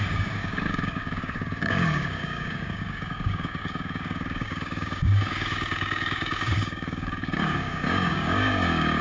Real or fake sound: fake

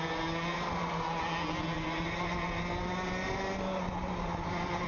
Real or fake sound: real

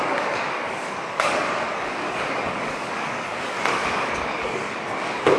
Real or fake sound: fake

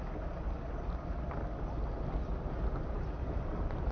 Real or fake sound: real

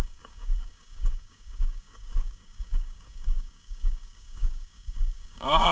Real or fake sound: fake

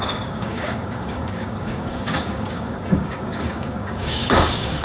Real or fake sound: fake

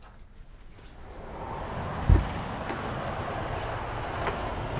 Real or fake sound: real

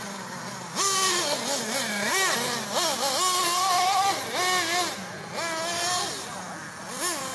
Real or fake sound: real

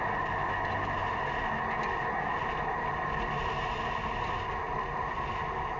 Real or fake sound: real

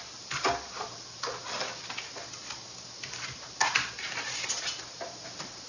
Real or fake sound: real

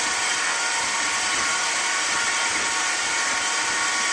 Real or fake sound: real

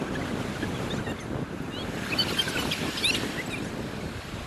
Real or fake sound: real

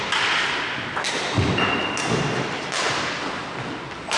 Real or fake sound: real